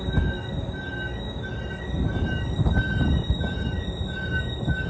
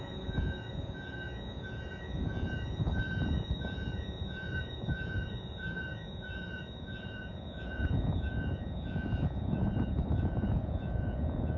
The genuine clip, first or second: first